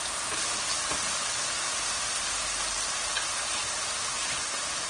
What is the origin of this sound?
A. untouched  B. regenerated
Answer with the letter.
A